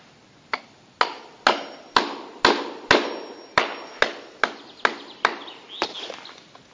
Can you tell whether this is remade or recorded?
recorded